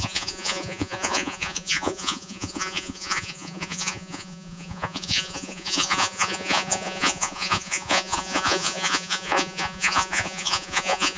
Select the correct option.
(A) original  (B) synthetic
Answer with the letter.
B